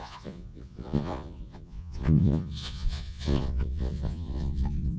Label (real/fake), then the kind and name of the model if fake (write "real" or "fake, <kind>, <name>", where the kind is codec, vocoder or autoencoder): fake, vocoder, Vocos